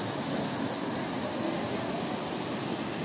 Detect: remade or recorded recorded